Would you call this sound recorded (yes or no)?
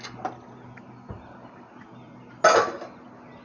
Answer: yes